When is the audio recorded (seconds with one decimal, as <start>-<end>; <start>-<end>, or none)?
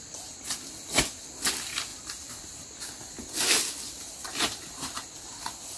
0.0-5.8